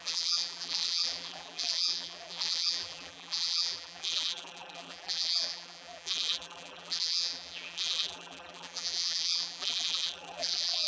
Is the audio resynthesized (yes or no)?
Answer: yes